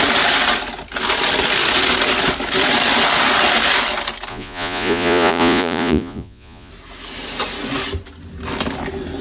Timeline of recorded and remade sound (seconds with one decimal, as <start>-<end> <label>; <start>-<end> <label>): 0.0-4.3 recorded; 4.3-6.7 remade; 6.7-9.2 recorded